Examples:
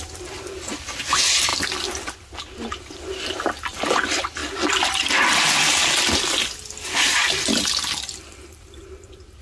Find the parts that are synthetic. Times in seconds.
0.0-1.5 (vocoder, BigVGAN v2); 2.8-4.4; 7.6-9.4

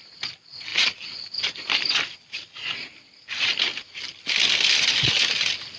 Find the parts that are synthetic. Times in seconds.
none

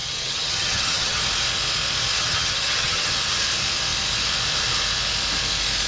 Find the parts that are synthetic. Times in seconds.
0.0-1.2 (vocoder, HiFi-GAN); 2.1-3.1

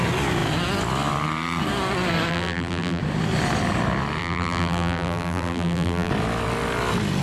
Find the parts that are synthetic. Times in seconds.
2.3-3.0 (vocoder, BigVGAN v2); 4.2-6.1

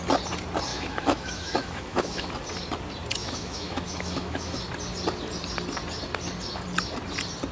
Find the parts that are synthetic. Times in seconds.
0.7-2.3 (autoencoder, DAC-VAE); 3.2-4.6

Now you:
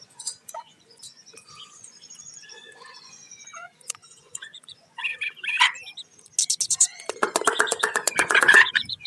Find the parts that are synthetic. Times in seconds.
0.0-5.0 (vocoder, Vocos); 6.7-9.1

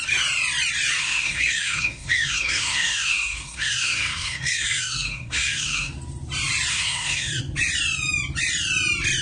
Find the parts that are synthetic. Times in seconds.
1.0-5.9 (codec, SNAC); 6.7-7.4

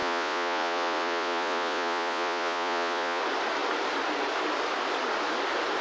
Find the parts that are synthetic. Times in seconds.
0.0-3.2 (vocoder, Vocos)